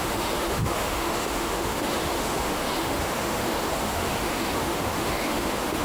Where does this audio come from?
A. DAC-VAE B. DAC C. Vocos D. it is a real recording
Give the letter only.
A